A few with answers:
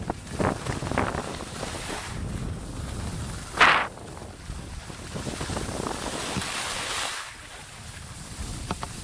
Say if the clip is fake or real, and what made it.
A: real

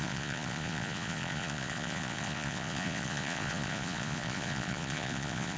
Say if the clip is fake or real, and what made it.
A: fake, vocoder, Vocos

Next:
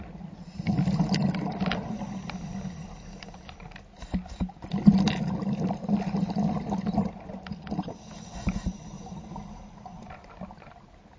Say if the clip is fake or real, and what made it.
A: real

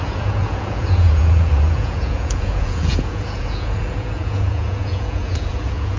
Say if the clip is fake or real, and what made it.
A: fake, vocoder, Vocos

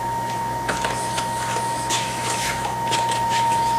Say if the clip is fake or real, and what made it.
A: fake, autoencoder, DAC-VAE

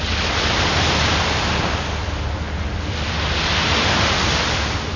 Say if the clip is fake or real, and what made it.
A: real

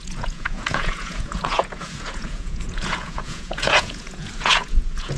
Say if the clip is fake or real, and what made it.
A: fake, vocoder, Vocos